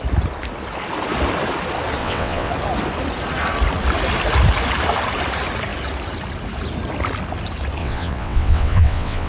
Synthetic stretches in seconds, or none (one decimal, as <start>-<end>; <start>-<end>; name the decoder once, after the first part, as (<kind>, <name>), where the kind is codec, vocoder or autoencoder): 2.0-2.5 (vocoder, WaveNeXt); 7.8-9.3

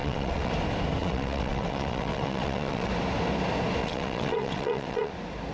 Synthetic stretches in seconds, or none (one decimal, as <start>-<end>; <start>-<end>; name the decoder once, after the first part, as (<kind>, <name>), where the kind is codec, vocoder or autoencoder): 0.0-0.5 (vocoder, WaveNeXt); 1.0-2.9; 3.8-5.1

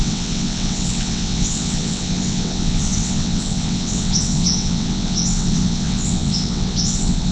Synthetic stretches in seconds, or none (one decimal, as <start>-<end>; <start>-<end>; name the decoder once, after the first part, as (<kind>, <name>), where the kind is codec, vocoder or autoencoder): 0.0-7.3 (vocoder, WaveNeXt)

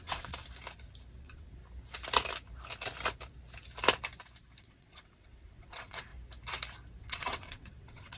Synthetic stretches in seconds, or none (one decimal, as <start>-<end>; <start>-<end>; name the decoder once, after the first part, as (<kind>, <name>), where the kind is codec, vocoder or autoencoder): 0.0-0.4 (vocoder, WaveNeXt); 1.2-1.6; 4.6-6.1; 7.0-8.2

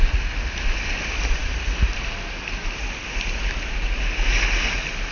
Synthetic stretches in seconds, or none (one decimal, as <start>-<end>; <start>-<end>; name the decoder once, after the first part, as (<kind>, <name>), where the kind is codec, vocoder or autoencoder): none